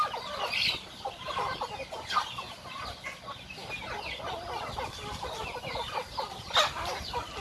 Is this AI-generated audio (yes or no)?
no